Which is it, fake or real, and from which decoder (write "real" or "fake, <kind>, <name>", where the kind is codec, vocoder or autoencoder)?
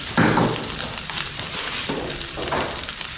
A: real